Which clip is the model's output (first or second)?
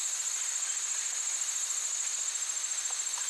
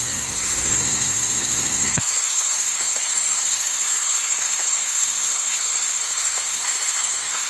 second